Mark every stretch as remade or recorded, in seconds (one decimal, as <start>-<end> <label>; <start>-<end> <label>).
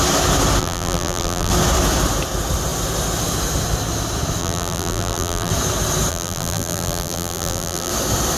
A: 0.0-0.6 recorded; 0.6-1.5 remade; 1.5-4.4 recorded; 4.4-5.5 remade; 5.5-6.1 recorded; 6.1-7.9 remade; 7.9-8.4 recorded